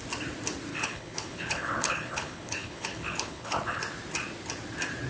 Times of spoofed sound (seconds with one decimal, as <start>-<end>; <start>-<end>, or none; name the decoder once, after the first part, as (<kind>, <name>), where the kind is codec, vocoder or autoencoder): 0.7-3.8 (codec, HILCodec)